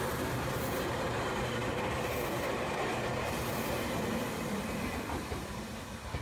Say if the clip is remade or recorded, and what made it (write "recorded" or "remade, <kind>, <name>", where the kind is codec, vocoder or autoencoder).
recorded